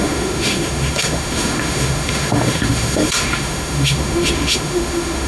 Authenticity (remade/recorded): remade